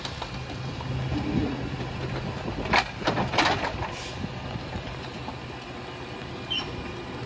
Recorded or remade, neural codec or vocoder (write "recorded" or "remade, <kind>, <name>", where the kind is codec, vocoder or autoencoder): recorded